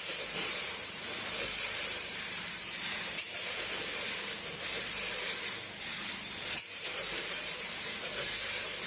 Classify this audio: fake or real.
fake